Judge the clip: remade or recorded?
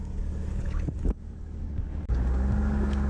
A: remade